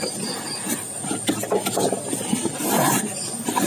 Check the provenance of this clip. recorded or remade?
recorded